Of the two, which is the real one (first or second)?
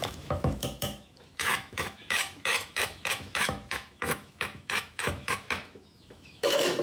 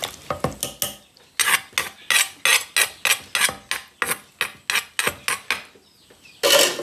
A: second